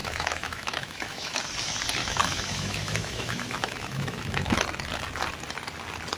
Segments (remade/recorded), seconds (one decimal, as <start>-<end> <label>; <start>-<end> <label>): 0.0-1.4 remade; 1.4-2.0 recorded; 2.0-4.6 remade; 4.6-6.2 recorded